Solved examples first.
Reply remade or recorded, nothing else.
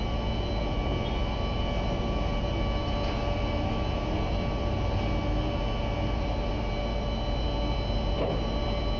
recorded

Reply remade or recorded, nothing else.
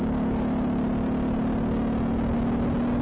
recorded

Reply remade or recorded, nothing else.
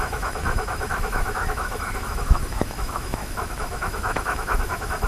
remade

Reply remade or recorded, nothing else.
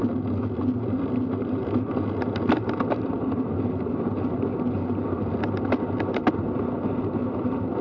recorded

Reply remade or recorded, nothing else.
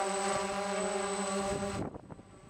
recorded